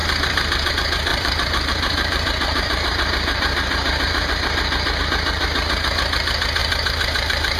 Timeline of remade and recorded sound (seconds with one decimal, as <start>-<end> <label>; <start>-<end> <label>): 0.0-0.7 remade; 0.7-1.1 recorded; 1.1-5.0 remade; 5.0-6.6 recorded; 6.6-7.6 remade